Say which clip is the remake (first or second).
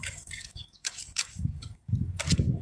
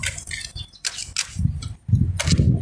first